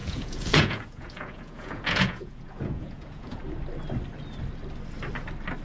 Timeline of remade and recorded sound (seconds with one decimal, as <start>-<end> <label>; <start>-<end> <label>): 0.0-3.4 remade; 3.4-5.6 recorded